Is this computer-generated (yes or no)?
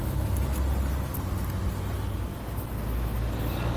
no